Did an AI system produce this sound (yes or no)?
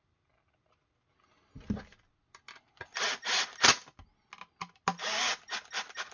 no